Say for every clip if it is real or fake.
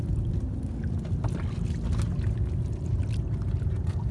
real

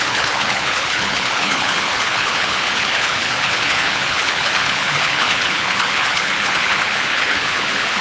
fake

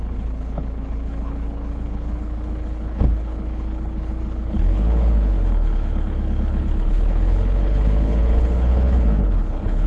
fake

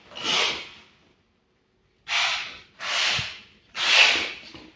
real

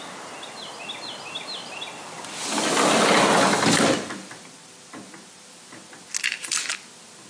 real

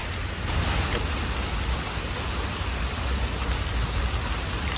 real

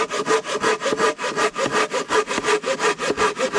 real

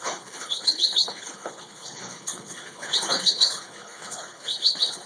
fake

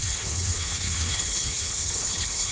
fake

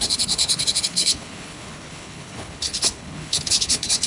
fake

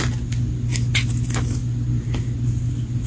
real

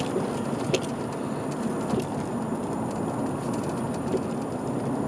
real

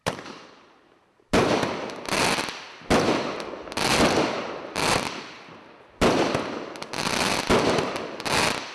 real